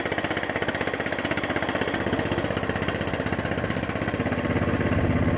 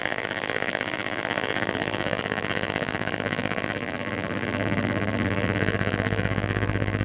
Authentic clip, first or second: first